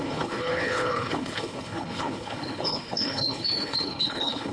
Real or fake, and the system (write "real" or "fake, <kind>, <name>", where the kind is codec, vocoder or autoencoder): fake, codec, HILCodec